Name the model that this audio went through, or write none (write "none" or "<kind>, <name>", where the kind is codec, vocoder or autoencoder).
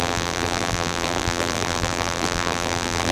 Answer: vocoder, BigVGAN v2